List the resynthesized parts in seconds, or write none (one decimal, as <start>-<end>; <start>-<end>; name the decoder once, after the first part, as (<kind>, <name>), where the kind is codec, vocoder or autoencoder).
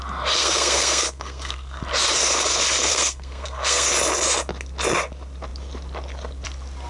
0.4-1.8 (codec, SNAC); 2.9-3.9